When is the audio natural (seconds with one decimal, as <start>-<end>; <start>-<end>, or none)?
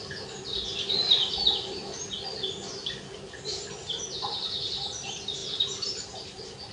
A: 0.0-6.7